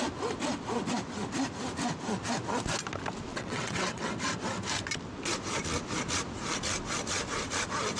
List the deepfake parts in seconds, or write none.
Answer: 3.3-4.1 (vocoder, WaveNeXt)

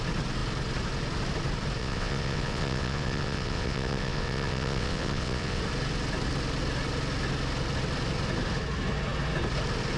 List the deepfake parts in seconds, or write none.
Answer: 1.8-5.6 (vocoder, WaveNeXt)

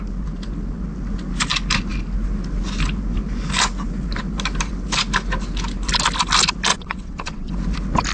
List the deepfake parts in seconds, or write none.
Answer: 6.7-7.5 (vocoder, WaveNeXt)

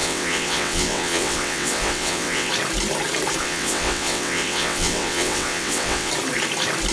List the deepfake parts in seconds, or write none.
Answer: 0.0-2.5 (vocoder, WaveNeXt); 3.4-6.1

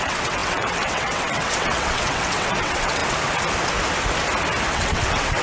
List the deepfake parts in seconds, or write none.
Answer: 0.0-3.0 (vocoder, WaveNeXt); 4.7-5.4

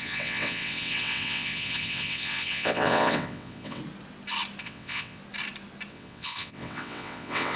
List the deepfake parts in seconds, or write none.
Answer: 0.0-3.8 (vocoder, WaveNeXt); 4.6-5.2; 5.9-7.6

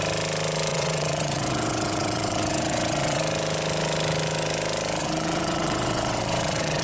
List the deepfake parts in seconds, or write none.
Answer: 0.7-3.2 (vocoder, WaveNeXt); 5.0-6.8

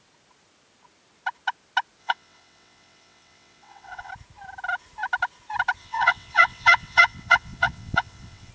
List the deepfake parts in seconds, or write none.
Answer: 2.0-4.1 (vocoder, WaveNeXt); 5.8-8.5